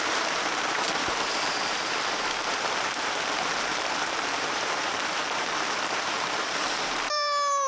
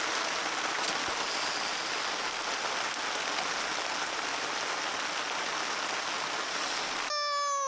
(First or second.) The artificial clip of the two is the first